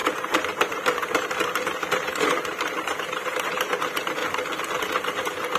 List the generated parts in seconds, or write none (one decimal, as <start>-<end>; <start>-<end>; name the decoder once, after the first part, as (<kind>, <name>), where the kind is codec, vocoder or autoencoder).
0.0-4.2 (vocoder, BigVGAN v2); 4.8-5.6